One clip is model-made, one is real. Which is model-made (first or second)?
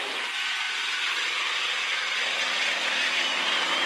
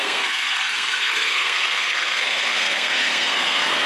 second